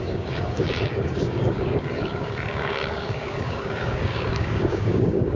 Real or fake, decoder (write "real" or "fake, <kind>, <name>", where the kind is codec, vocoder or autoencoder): fake, codec, DAC